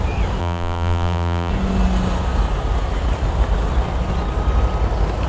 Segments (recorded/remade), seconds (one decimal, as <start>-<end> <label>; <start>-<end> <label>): 0.0-0.4 recorded; 0.4-1.5 remade; 1.5-5.3 recorded